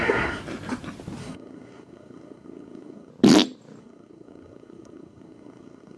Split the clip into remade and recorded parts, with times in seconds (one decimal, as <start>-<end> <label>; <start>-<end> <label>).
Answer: 0.0-0.4 remade; 0.4-1.2 recorded; 1.2-3.1 remade; 3.1-3.8 recorded; 3.8-6.0 remade